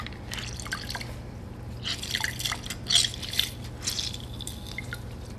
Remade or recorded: recorded